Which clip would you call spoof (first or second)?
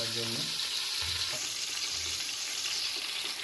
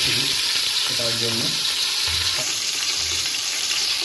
second